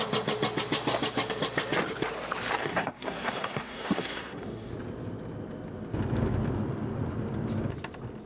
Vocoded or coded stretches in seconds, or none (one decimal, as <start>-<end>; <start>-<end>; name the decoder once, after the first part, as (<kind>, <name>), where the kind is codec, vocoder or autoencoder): 2.6-4.7 (codec, SNAC)